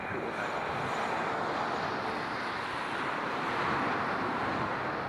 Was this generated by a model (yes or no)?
no